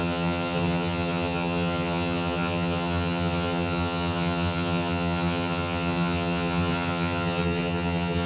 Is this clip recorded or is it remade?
remade